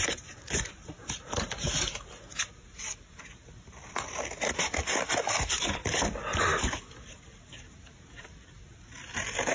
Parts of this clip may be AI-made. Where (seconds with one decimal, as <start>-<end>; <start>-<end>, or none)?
none